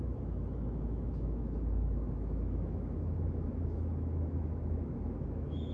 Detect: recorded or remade remade